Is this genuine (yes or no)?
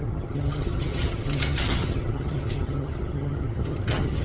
no